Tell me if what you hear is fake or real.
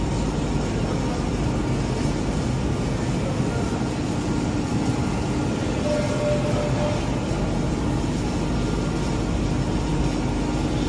real